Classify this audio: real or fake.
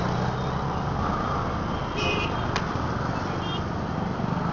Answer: real